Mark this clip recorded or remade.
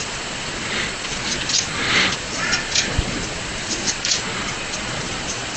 remade